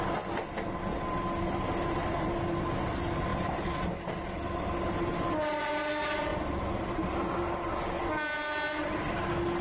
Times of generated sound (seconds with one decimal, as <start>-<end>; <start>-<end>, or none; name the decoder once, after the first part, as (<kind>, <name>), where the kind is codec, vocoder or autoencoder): none